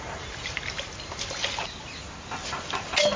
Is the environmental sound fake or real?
real